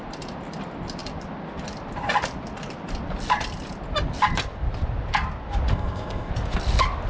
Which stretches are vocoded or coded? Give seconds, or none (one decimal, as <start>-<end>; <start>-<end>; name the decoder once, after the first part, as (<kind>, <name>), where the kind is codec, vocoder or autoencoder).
5.7-6.3 (codec, ZipCodec)